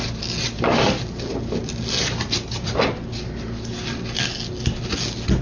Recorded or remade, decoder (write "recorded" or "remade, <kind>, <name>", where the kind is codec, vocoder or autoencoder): recorded